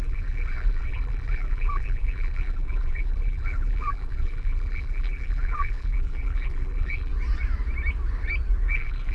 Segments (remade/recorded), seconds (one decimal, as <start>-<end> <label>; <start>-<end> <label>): 0.0-7.1 remade; 7.1-8.7 recorded; 8.7-9.1 remade